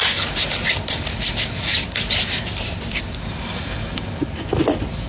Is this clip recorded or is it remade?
remade